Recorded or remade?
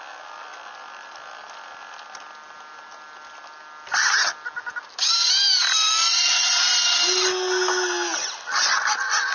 recorded